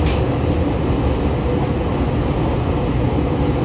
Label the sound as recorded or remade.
recorded